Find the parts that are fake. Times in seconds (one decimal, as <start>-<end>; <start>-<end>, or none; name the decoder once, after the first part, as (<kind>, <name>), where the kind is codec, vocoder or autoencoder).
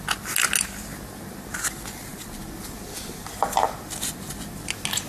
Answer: none